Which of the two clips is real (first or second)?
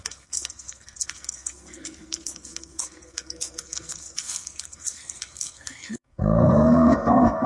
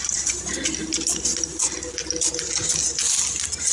second